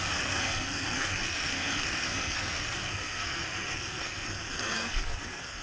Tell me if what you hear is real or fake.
fake